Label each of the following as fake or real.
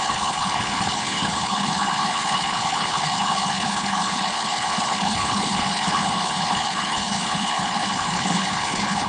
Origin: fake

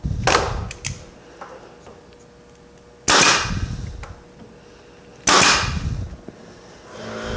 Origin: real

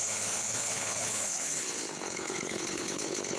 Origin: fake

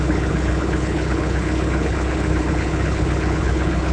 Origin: fake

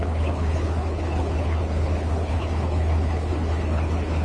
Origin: fake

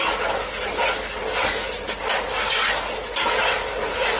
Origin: real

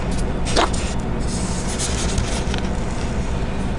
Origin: real